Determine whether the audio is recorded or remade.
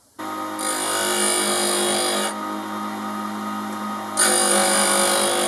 recorded